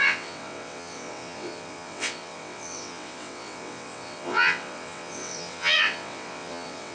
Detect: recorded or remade remade